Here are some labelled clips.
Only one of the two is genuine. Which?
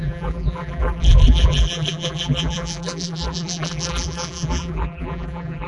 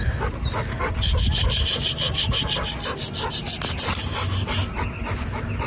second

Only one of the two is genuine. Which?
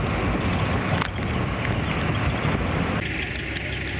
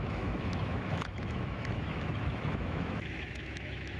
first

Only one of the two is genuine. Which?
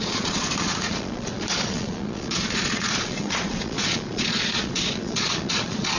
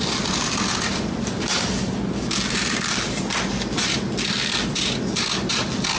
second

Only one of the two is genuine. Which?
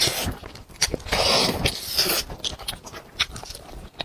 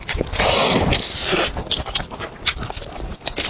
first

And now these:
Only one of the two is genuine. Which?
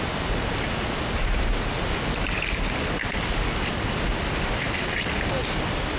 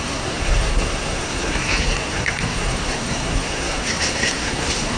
first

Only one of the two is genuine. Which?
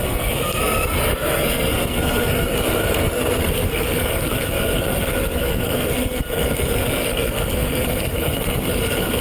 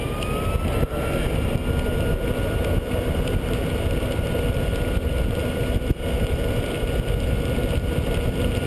second